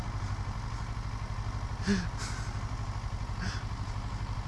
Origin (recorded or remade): recorded